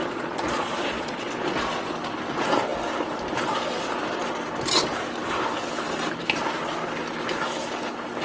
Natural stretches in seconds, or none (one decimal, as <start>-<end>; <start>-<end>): 1.3-8.2